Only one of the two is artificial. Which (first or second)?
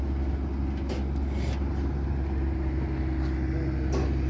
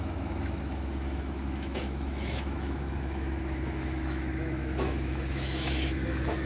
second